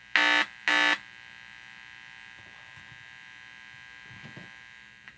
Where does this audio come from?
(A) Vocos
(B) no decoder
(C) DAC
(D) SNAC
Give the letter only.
B